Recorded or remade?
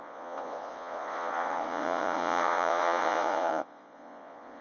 remade